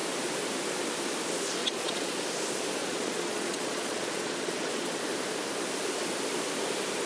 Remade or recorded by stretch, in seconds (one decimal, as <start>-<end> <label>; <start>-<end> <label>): 0.0-1.6 recorded; 1.6-2.2 remade; 2.2-2.8 recorded; 2.8-5.0 remade; 5.0-7.1 recorded